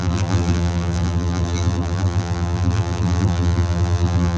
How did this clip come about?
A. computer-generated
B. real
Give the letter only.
A